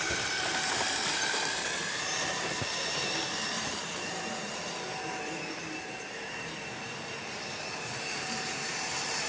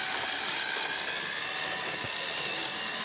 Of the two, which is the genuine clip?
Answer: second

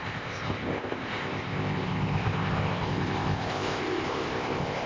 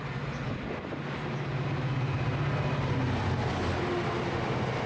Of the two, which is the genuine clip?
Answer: second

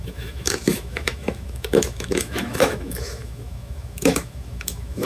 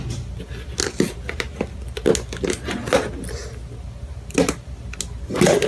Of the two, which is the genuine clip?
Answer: second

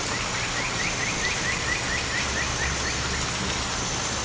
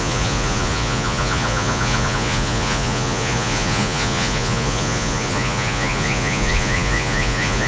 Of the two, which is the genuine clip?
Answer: first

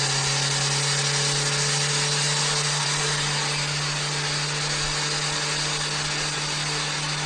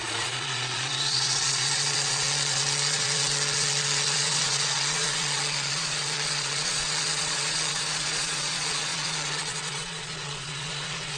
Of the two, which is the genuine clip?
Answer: first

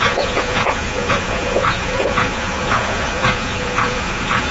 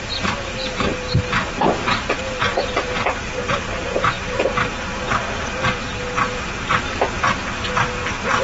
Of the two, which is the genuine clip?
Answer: second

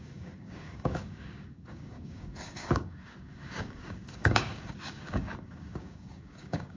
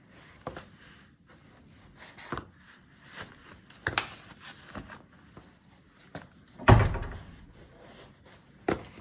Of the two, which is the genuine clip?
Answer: second